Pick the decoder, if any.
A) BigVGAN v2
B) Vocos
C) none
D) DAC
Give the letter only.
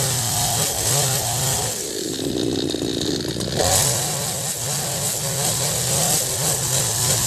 C